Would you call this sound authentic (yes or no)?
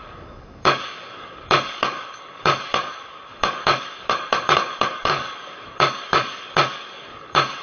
no